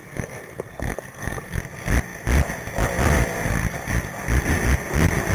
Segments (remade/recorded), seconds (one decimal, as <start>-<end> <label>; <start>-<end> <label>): 0.0-1.4 remade; 1.4-5.3 recorded